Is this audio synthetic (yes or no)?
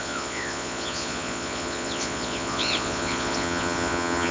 yes